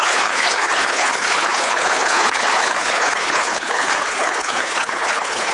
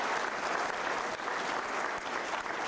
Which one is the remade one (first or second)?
first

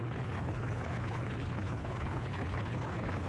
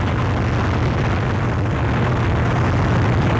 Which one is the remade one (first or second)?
first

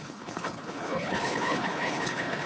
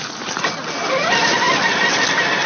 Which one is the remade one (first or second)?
first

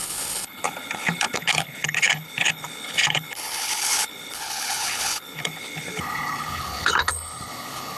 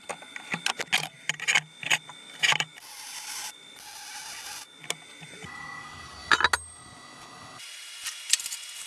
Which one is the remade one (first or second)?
first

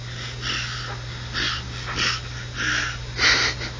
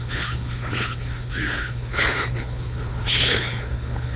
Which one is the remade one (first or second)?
second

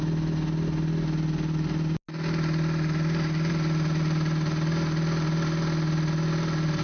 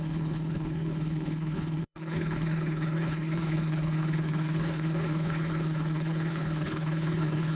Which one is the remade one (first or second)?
second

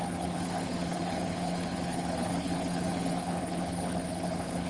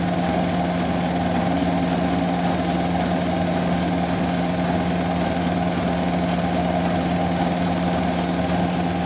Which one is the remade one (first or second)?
first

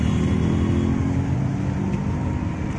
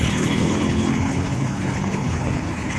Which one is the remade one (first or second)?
second